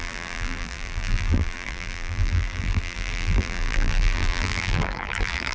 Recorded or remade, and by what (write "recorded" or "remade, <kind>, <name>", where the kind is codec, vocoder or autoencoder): remade, vocoder, BigVGAN v2